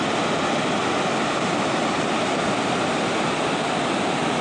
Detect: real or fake real